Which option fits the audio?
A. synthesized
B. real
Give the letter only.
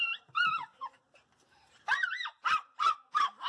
A